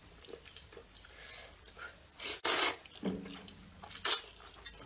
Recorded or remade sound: recorded